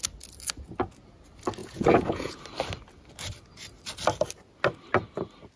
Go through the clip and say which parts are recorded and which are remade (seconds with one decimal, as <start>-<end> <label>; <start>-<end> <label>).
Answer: 0.0-1.6 recorded; 1.6-2.4 remade; 2.4-5.6 recorded